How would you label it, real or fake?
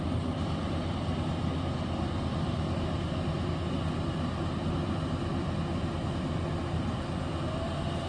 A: real